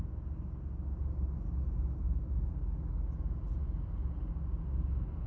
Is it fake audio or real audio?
real